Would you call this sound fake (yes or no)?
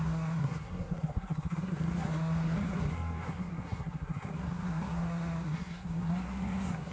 yes